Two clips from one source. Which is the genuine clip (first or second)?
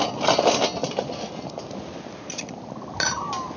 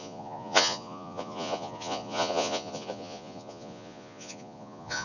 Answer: first